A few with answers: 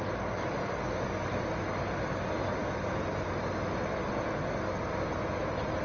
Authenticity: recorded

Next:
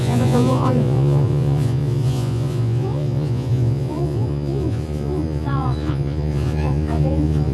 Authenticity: remade